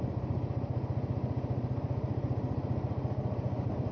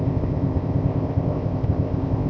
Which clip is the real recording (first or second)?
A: first